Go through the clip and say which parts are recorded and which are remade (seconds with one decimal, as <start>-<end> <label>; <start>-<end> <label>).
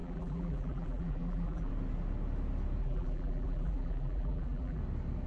0.0-1.7 remade; 1.7-2.8 recorded; 2.8-4.8 remade; 4.8-5.3 recorded